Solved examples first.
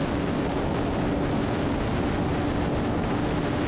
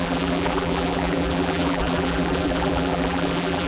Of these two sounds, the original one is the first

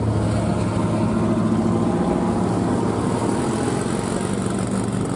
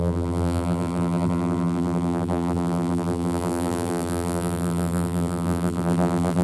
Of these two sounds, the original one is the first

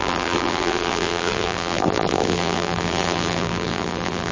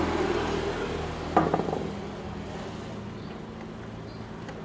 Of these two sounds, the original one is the second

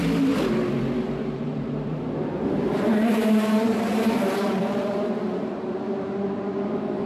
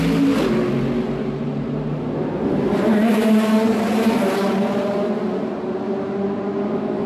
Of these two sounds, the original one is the second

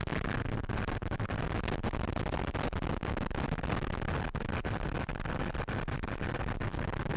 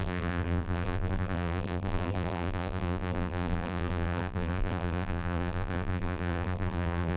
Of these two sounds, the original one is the first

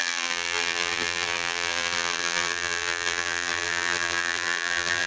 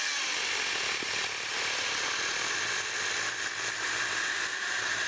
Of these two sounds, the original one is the second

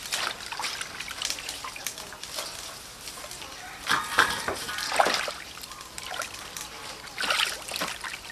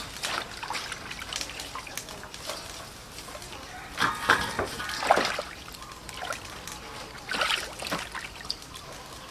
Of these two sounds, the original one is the second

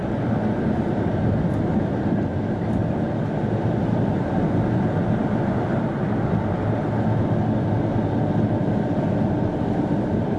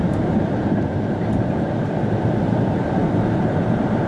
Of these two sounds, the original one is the first